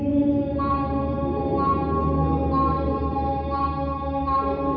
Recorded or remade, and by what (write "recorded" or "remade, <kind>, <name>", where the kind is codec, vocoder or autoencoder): recorded